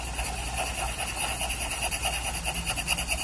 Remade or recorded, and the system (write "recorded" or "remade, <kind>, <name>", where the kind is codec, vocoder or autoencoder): recorded